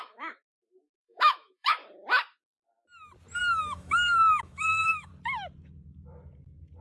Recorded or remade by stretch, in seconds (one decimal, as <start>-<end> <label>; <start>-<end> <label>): 0.0-1.8 remade; 1.8-3.4 recorded; 3.4-5.1 remade; 5.1-6.8 recorded